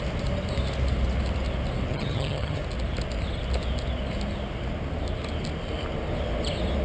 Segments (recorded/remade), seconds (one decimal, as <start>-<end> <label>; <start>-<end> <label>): 0.0-1.9 recorded; 1.9-2.6 remade; 2.6-6.8 recorded